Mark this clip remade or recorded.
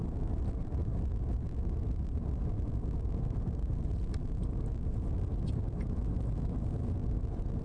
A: recorded